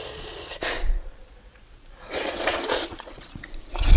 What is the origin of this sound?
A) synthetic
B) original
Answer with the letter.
A